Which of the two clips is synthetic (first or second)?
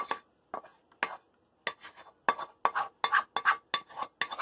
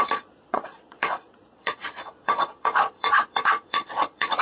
second